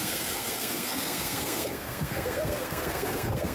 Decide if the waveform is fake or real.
fake